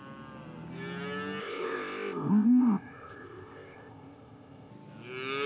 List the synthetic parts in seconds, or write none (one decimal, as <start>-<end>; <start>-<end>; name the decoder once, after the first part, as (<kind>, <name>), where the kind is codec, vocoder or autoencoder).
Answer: 1.4-4.7 (codec, ZipCodec)